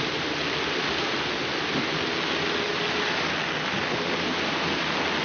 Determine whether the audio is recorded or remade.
recorded